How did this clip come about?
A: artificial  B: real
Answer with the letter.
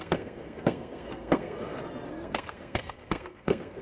A